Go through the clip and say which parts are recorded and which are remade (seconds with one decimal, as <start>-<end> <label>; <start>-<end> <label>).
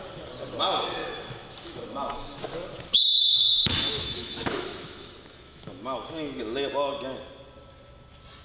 0.0-1.0 recorded; 1.0-2.4 remade; 2.4-2.9 recorded; 2.9-6.4 remade; 6.4-8.4 recorded